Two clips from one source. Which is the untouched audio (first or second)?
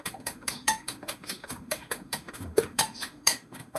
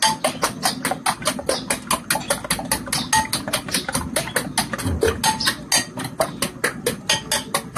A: second